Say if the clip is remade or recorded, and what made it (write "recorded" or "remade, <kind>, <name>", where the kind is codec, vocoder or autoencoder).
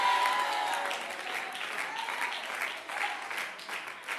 recorded